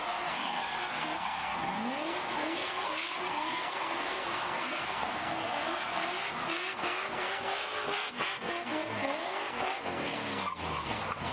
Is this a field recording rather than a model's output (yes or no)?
no